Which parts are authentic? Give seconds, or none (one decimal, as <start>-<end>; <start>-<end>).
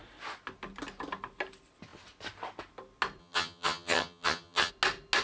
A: 0.0-3.2; 4.7-5.2